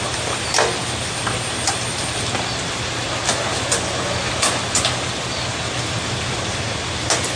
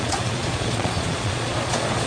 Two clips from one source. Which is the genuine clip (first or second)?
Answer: first